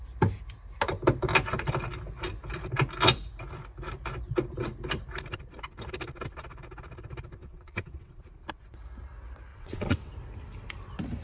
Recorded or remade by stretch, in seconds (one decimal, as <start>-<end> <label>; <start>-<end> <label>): 0.0-7.4 recorded; 7.4-8.2 remade; 8.2-9.5 recorded; 9.5-10.1 remade; 10.1-11.2 recorded